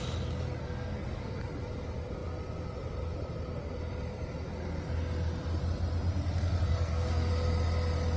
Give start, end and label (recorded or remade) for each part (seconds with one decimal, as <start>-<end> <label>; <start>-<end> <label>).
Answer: 0.0-0.6 recorded; 0.6-1.4 remade; 1.4-6.7 recorded; 6.7-7.3 remade; 7.3-8.2 recorded